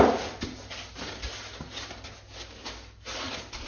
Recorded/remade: recorded